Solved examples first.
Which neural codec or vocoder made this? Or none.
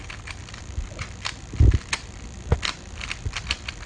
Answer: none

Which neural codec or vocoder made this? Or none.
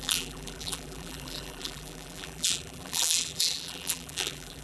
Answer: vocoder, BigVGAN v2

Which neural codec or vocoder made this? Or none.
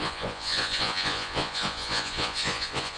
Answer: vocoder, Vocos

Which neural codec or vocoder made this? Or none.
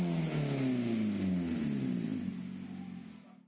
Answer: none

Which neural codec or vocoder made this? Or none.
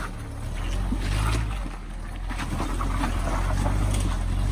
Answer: none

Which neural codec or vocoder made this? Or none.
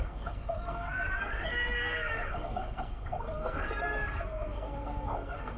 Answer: codec, SNAC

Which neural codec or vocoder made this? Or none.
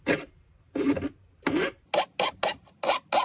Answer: none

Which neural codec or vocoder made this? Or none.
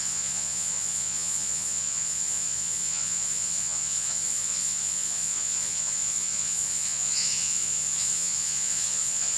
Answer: vocoder, Vocos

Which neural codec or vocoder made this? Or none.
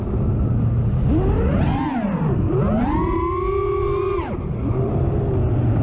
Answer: none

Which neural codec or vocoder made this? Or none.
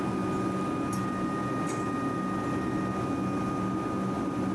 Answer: none